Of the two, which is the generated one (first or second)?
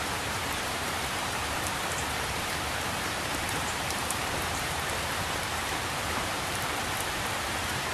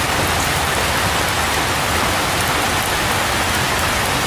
first